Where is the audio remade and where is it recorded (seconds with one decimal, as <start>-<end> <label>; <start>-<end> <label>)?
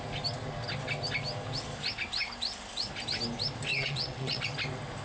0.0-3.7 recorded; 3.7-4.4 remade; 4.4-5.0 recorded